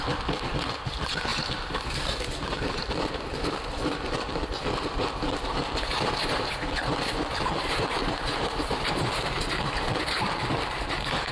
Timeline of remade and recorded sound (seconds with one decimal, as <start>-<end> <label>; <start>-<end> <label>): 0.0-11.3 recorded